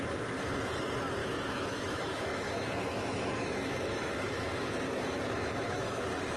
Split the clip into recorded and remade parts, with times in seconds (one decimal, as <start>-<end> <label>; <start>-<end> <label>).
0.0-1.2 recorded; 1.2-4.5 remade; 4.5-5.4 recorded; 5.4-6.0 remade; 6.0-6.4 recorded